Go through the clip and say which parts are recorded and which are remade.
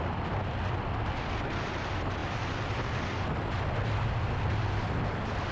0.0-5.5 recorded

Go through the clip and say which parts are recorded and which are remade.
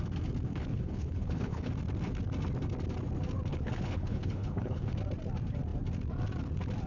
0.0-0.5 recorded; 0.5-1.7 remade; 1.7-3.5 recorded; 3.5-5.0 remade; 5.0-6.9 recorded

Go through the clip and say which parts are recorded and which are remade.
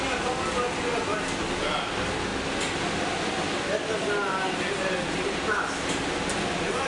0.0-6.9 recorded